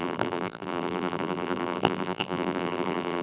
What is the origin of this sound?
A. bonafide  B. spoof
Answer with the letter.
B